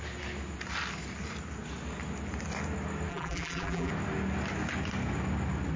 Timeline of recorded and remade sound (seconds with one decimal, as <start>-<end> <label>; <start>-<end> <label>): 0.0-3.1 recorded; 3.1-3.9 remade; 3.9-5.8 recorded